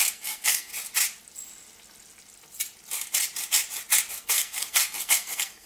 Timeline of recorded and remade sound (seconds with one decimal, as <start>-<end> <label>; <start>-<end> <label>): 0.0-0.7 remade; 0.7-4.1 recorded; 4.1-5.7 remade